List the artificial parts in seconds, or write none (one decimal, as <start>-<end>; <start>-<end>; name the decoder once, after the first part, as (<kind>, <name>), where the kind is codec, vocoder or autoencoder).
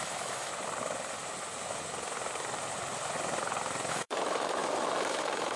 0.0-0.5 (autoencoder, DAC-VAE); 3.9-5.6